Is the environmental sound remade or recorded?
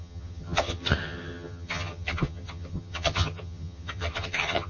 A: remade